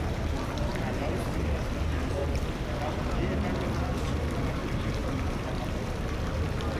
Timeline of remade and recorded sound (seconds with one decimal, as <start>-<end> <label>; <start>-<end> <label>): 0.0-0.7 recorded; 0.7-1.6 remade; 1.6-2.2 recorded; 2.2-2.8 remade; 2.8-5.0 recorded; 5.0-6.1 remade; 6.1-6.8 recorded

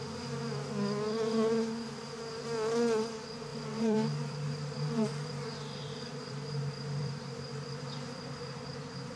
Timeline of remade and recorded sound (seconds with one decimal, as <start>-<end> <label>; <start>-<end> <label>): 0.0-3.5 recorded; 3.5-5.3 remade; 5.3-5.8 recorded; 5.8-9.2 remade

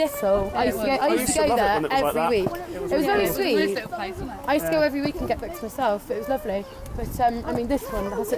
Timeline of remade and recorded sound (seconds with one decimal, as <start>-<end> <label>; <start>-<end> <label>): 0.0-8.4 recorded

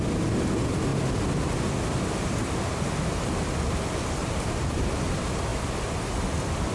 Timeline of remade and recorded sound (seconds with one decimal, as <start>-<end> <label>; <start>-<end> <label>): 0.0-4.2 recorded; 4.2-5.0 remade; 5.0-5.5 recorded; 5.5-6.1 remade; 6.1-6.7 recorded

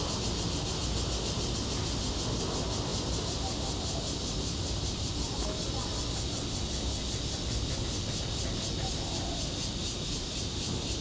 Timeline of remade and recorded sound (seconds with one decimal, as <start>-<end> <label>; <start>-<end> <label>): 0.0-2.9 recorded; 2.9-5.1 remade; 5.1-9.8 recorded; 9.8-11.0 remade

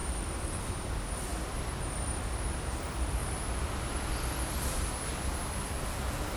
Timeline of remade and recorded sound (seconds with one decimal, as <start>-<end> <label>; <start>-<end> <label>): 0.0-0.7 remade; 0.7-1.3 recorded; 1.3-2.2 remade; 2.2-3.2 recorded; 3.2-4.5 remade; 4.5-6.4 recorded

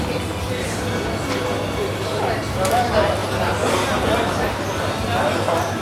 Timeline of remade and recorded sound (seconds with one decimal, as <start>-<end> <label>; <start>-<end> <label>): 0.0-5.8 recorded

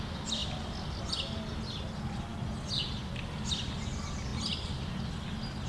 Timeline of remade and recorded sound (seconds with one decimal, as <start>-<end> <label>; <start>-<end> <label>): 0.0-5.7 recorded